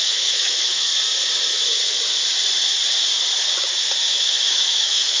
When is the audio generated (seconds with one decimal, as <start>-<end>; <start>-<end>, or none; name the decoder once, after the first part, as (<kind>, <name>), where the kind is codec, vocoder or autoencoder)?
0.0-0.9 (autoencoder, DAC-VAE); 4.0-5.2